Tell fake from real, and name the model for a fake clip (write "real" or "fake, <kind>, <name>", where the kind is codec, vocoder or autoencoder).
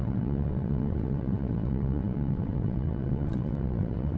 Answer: fake, vocoder, WaveNeXt